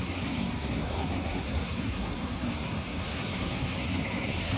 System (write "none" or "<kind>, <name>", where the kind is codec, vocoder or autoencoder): codec, SNAC